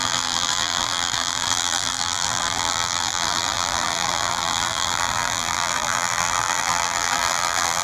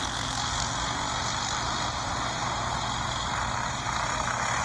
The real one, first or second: second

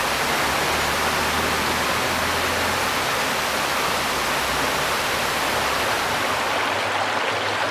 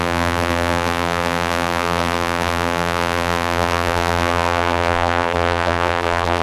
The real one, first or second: first